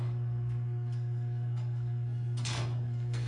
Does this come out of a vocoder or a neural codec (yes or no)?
yes